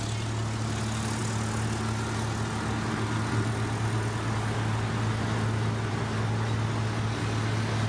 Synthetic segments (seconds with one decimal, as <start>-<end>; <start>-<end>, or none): none